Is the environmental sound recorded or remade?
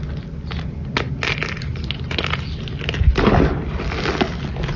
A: recorded